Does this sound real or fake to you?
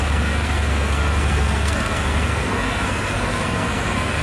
fake